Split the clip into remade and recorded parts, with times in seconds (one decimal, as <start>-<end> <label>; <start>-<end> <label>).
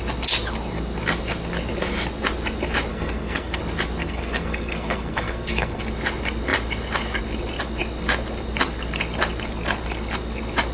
0.0-2.9 recorded; 2.9-3.6 remade; 3.6-4.0 recorded; 4.0-5.8 remade; 5.8-10.7 recorded